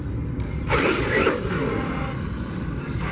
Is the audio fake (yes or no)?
no